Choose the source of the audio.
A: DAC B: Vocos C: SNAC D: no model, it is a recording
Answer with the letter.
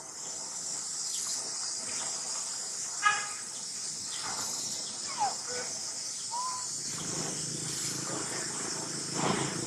D